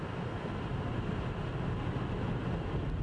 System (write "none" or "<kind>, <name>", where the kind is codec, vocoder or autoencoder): none